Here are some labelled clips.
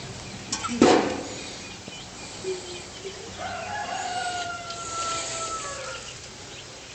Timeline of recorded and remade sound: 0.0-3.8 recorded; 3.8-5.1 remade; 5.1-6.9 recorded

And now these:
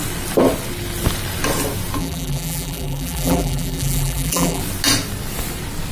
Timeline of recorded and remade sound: 0.0-2.0 recorded; 2.0-4.6 remade; 4.6-5.9 recorded